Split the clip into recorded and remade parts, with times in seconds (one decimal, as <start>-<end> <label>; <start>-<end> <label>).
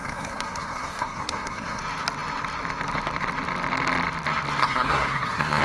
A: 0.0-1.8 remade; 1.8-4.6 recorded; 4.6-5.6 remade